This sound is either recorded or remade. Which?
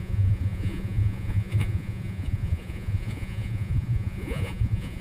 remade